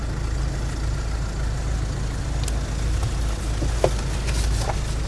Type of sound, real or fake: real